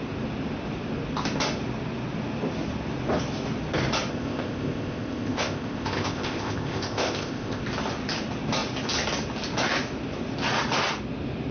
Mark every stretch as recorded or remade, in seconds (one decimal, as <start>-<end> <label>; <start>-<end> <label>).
0.0-4.1 recorded; 4.1-7.6 remade; 7.6-11.5 recorded

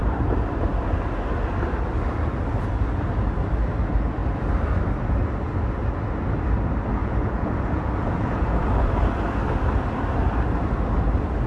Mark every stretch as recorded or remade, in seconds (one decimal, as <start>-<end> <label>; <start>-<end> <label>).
0.0-7.0 recorded; 7.0-8.9 remade; 8.9-11.5 recorded

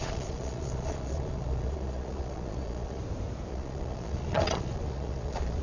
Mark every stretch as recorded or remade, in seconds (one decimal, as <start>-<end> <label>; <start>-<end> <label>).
0.0-3.0 remade; 3.0-3.5 recorded; 3.5-5.6 remade

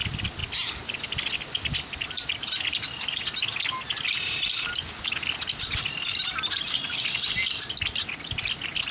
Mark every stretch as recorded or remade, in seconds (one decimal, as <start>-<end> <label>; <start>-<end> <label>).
0.0-8.9 recorded

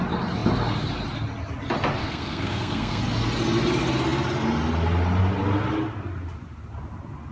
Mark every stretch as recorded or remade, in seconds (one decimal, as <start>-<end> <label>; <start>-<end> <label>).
0.0-2.0 recorded; 2.0-3.0 remade; 3.0-7.3 recorded